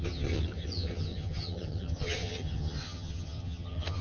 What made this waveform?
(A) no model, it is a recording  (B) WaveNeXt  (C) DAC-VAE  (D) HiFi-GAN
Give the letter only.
D